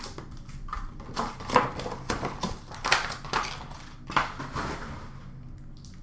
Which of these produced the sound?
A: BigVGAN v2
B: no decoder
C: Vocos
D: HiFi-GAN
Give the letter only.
B